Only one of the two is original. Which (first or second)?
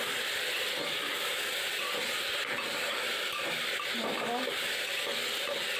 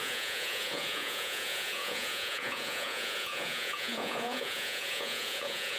first